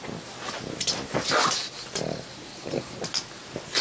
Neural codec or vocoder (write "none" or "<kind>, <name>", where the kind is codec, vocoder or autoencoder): none